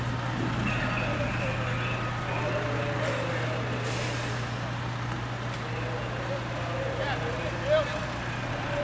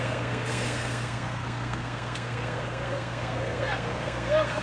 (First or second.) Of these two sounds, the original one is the first